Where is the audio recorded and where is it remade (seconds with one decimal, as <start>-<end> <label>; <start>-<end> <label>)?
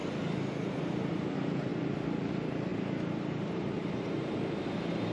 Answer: 0.0-0.8 recorded; 0.8-1.7 remade; 1.7-2.3 recorded; 2.3-5.1 remade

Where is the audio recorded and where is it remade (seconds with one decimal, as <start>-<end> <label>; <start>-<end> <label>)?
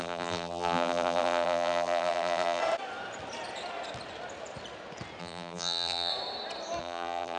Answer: 0.0-2.6 remade; 2.6-5.2 recorded; 5.2-6.1 remade; 6.1-6.8 recorded; 6.8-7.4 remade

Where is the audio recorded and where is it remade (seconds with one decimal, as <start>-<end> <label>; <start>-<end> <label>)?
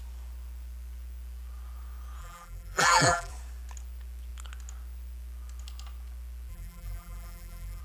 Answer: 0.0-2.2 recorded; 2.2-3.3 remade; 3.3-6.5 recorded; 6.5-7.8 remade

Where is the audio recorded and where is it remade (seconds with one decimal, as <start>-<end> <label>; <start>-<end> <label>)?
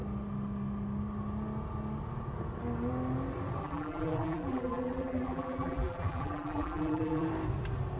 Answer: 0.0-3.6 recorded; 3.6-7.3 remade; 7.3-8.0 recorded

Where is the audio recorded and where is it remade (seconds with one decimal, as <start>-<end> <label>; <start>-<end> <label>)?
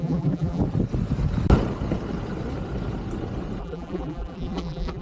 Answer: 0.0-0.6 remade; 0.6-3.6 recorded; 3.6-5.0 remade